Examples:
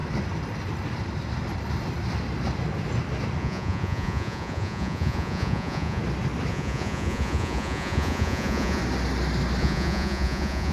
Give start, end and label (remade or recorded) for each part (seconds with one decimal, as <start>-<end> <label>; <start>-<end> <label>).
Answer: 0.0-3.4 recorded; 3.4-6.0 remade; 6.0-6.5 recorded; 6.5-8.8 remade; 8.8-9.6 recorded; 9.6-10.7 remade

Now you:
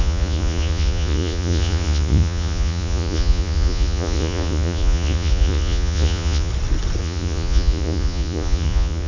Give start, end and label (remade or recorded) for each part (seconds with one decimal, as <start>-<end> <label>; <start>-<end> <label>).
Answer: 0.0-6.5 remade; 6.5-7.0 recorded; 7.0-9.1 remade

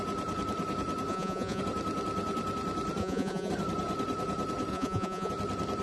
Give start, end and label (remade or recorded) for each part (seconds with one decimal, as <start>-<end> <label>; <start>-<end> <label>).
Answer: 0.0-1.1 recorded; 1.1-1.6 remade; 1.6-3.0 recorded; 3.0-3.5 remade; 3.5-4.7 recorded; 4.7-5.3 remade; 5.3-5.8 recorded

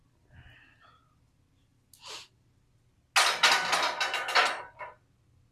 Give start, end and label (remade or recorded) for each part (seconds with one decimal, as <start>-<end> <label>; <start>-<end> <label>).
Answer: 0.0-5.5 recorded